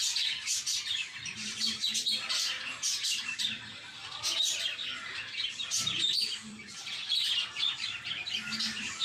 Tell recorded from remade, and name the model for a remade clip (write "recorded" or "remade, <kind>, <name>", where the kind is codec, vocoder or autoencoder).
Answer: remade, vocoder, BigVGAN v2